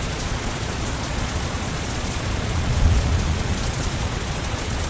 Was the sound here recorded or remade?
remade